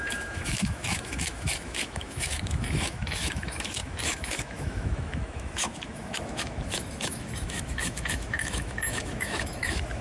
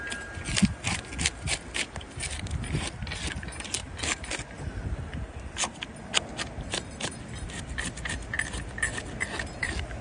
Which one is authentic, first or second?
second